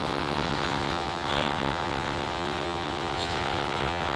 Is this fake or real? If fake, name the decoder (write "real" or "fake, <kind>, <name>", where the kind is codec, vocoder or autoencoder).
fake, vocoder, WaveNeXt